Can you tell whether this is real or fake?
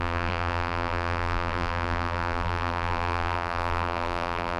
fake